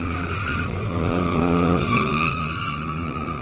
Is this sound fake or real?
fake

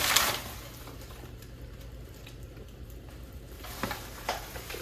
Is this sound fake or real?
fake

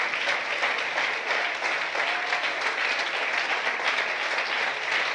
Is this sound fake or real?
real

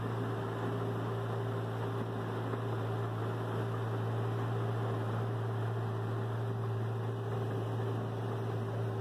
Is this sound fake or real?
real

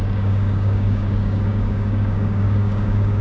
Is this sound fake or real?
fake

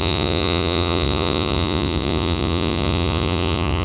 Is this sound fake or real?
fake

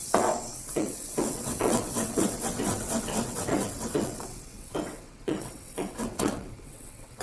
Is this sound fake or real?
fake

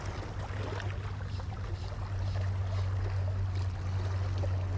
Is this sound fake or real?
real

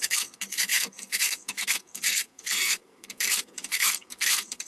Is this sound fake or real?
fake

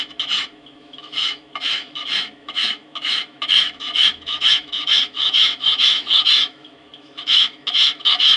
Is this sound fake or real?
fake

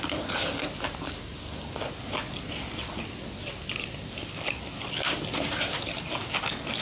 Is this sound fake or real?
real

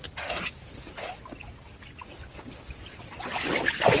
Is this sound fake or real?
real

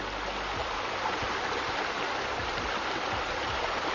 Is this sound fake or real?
real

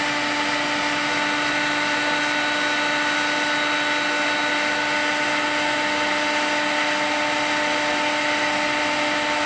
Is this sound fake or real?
real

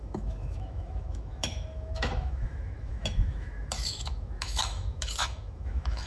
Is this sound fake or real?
fake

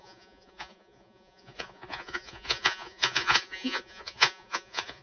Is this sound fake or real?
fake